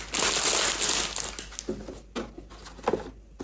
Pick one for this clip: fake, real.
real